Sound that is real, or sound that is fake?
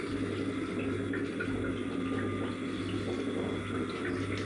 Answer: real